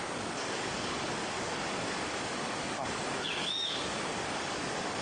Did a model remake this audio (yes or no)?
yes